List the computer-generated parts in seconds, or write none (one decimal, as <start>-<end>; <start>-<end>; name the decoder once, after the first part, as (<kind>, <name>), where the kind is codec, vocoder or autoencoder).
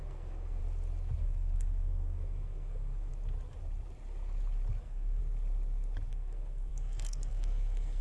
0.0-0.6 (codec, SNAC); 1.2-3.1; 4.8-5.2; 6.1-8.0